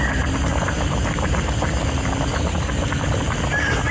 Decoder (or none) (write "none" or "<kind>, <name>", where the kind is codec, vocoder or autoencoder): none